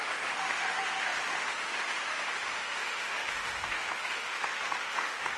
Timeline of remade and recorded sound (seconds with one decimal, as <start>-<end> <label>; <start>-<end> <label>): 0.0-5.4 remade